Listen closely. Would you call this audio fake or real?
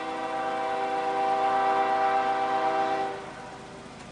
real